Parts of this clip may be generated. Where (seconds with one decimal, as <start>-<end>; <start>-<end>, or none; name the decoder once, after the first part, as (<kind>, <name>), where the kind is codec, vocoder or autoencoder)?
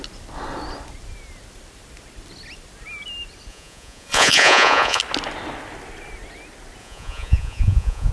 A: 3.5-5.0 (vocoder, Vocos); 6.8-8.1